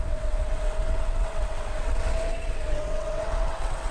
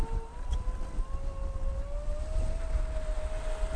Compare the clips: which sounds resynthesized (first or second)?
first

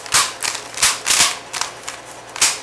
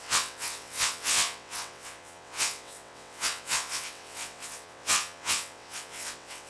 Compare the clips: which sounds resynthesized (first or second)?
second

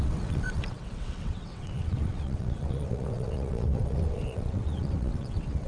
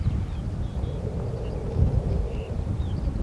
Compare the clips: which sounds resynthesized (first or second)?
first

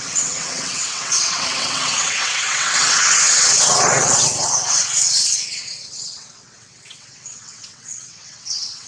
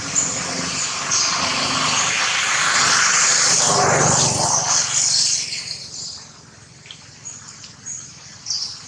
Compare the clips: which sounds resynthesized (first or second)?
first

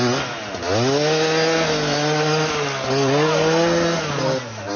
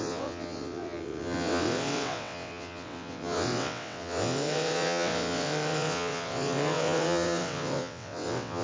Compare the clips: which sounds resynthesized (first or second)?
second